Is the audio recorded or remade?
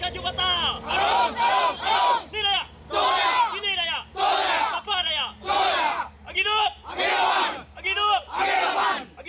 recorded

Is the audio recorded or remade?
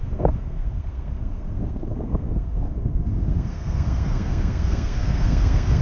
remade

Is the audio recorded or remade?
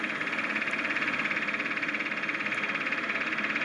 recorded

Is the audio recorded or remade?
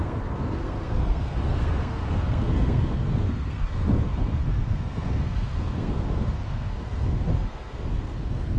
remade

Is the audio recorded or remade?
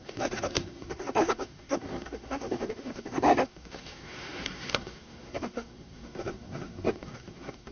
remade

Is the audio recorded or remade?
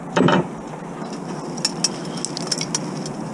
recorded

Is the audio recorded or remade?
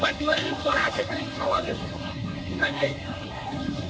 remade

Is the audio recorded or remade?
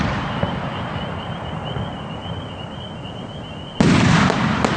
recorded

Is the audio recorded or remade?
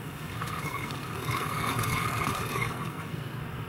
remade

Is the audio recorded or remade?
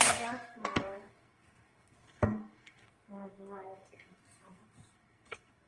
remade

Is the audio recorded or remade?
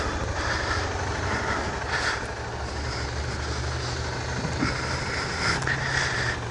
recorded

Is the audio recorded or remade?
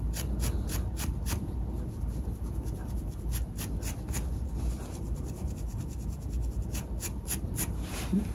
recorded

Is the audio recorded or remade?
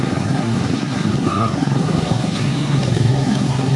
remade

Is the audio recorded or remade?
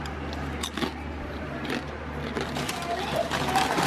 recorded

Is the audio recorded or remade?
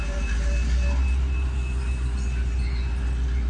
recorded